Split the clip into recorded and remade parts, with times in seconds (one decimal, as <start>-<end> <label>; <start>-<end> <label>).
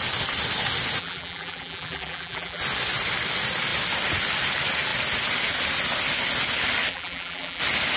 0.0-1.0 recorded; 1.0-2.6 remade; 2.6-6.9 recorded; 6.9-7.6 remade; 7.6-8.0 recorded